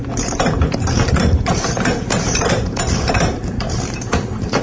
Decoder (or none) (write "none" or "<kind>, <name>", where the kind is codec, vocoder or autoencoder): vocoder, BigVGAN v2